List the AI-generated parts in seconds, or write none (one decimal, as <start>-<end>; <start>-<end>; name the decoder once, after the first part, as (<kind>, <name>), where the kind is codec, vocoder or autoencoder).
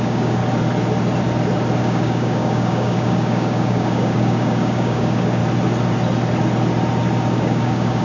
0.0-0.4 (codec, DAC); 1.8-5.4; 7.3-8.0